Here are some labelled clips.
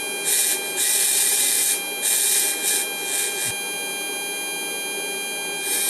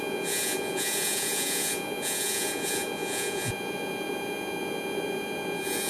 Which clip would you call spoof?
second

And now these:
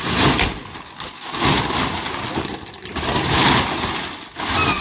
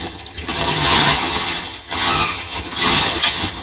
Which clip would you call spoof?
second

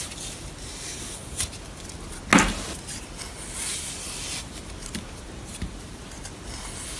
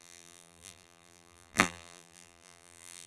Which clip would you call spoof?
second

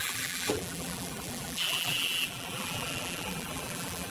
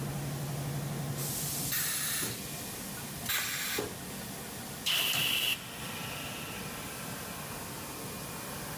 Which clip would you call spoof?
first